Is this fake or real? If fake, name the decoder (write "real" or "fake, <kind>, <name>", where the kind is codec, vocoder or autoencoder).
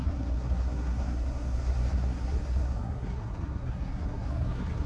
fake, codec, SNAC